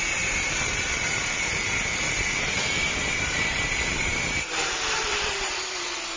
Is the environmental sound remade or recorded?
remade